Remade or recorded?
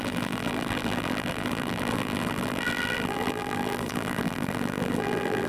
remade